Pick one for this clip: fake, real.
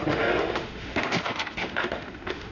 fake